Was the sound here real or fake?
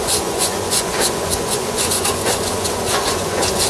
fake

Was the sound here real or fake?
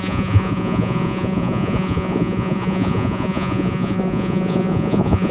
fake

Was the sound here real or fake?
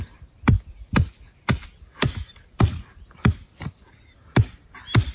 real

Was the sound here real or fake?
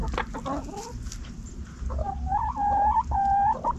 real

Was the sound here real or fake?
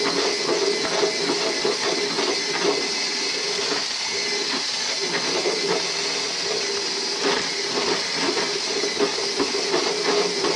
real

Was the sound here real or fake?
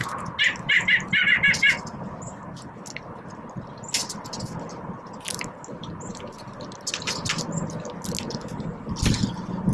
real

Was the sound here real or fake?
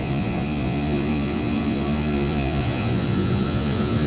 fake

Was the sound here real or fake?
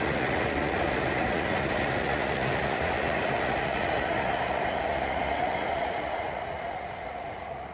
fake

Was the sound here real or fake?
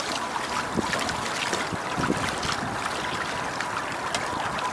real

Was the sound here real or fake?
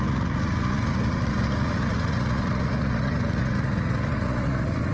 fake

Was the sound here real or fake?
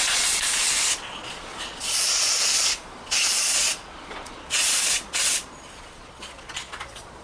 fake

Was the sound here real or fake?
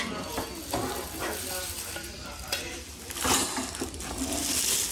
real